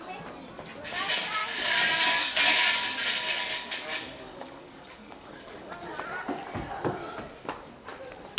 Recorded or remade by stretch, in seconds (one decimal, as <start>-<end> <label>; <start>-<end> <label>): 0.0-1.4 recorded; 1.4-5.7 remade; 5.7-8.4 recorded